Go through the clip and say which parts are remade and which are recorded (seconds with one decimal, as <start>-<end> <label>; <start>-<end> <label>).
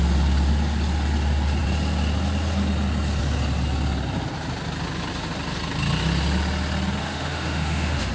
0.0-7.0 recorded; 7.0-8.1 remade